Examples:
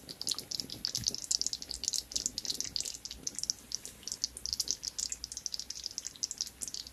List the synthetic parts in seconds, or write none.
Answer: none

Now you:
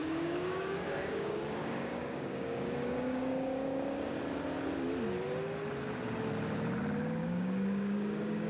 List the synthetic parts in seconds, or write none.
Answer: 0.0-4.2 (codec, DAC); 7.2-8.5

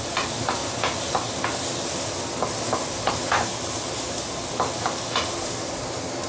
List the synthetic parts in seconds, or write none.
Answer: none

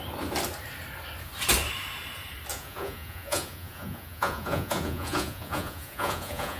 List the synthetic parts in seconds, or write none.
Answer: 2.5-6.6 (vocoder, Vocos)

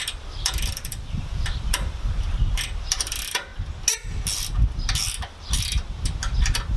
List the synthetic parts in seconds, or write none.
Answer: 0.0-3.5 (vocoder, BigVGAN v2); 5.4-6.8

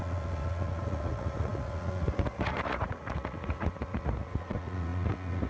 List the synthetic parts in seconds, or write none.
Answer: 0.0-5.5 (vocoder, Vocos)

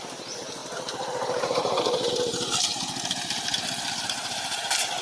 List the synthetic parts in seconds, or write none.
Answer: 0.0-2.7 (vocoder, BigVGAN v2); 4.0-5.0